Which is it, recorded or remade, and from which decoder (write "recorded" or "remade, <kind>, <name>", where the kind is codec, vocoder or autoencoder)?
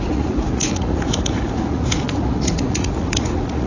remade, vocoder, Vocos